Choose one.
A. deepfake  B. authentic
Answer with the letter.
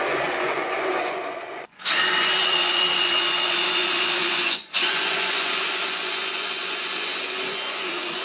A